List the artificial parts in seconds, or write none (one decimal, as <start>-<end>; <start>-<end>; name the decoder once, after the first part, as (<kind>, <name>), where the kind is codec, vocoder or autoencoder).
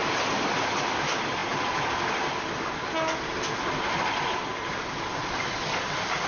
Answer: none